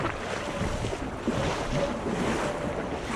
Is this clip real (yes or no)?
yes